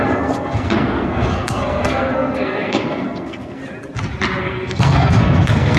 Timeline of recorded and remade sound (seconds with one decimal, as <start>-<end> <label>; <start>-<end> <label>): 0.0-3.6 remade; 3.6-4.4 recorded; 4.4-5.8 remade